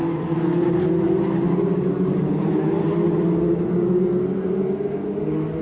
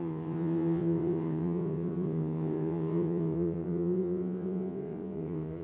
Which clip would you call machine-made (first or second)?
second